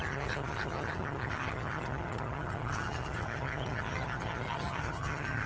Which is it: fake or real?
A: fake